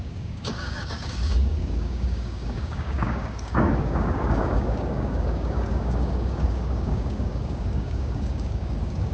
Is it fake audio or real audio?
fake